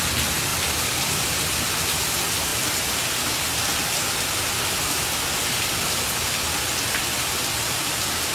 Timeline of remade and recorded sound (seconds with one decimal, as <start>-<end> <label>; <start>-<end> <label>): 0.0-0.5 recorded; 0.5-1.1 remade; 1.1-8.3 recorded